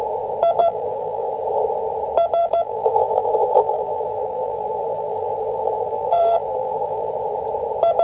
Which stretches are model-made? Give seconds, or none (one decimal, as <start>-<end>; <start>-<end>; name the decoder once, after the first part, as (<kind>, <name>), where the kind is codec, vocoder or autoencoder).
0.6-1.3 (vocoder, BigVGAN v2); 2.4-7.1